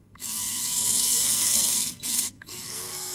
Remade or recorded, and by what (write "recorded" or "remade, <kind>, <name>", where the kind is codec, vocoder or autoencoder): remade, codec, SNAC